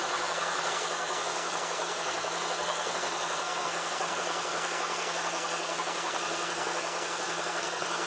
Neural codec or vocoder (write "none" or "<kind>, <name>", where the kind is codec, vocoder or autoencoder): codec, SNAC